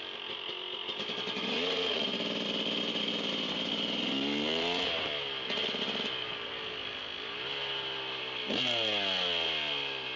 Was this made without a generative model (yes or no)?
yes